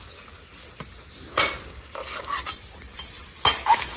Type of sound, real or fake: real